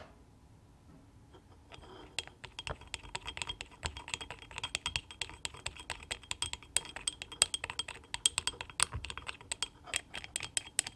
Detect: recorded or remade recorded